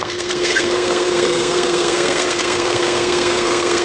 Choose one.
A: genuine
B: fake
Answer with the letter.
B